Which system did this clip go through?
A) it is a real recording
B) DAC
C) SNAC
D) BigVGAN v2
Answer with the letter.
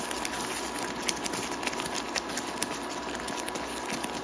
A